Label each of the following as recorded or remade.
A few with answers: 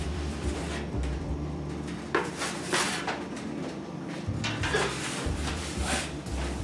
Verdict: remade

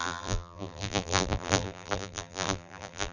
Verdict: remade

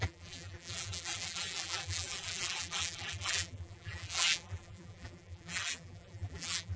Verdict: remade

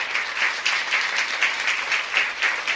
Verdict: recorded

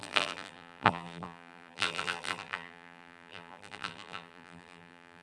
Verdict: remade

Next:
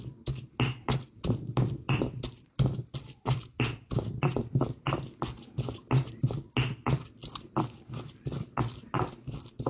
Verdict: recorded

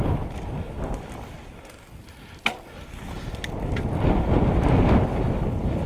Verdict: recorded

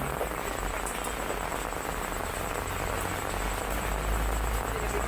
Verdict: recorded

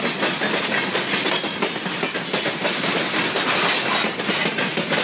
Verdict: recorded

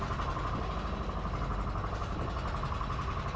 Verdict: recorded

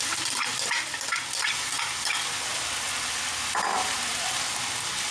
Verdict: recorded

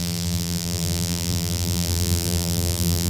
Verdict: remade